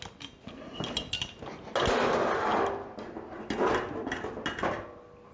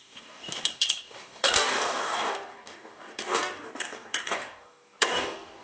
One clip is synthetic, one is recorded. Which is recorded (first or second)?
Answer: first